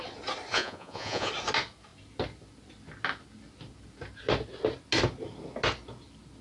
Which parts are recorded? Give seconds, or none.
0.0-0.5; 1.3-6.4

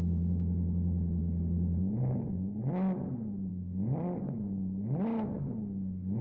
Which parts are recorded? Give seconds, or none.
0.0-6.2

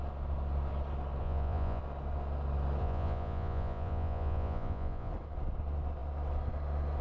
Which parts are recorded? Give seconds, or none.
0.0-1.2; 1.8-2.8; 5.1-7.0

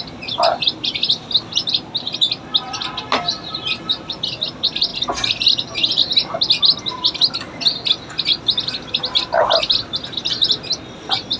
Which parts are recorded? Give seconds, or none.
0.0-11.4

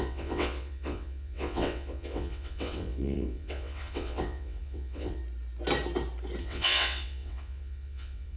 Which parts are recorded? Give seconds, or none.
5.2-6.4

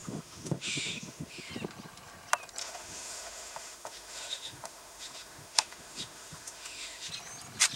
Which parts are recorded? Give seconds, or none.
1.5-2.6; 7.1-7.8

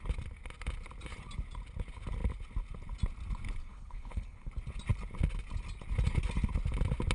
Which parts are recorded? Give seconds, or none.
0.0-3.6; 4.5-7.1

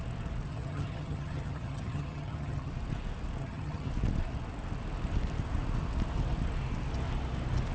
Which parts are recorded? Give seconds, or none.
0.0-0.5; 2.7-3.4; 3.9-7.7